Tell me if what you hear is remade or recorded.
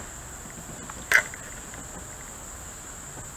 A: recorded